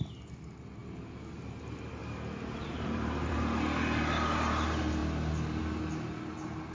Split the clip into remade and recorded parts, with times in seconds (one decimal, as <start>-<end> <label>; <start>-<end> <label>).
0.0-2.0 recorded; 2.0-3.3 remade; 3.3-6.7 recorded